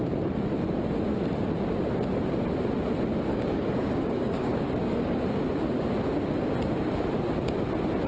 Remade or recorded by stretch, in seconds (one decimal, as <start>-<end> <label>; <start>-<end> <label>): 0.0-3.3 recorded; 3.3-5.2 remade; 5.2-8.1 recorded